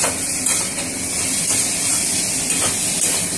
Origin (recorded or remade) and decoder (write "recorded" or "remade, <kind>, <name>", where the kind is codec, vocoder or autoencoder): recorded